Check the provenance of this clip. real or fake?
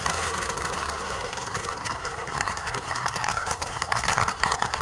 fake